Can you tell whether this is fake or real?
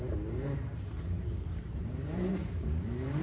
fake